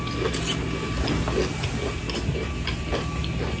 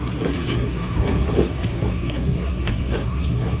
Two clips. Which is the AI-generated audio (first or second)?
second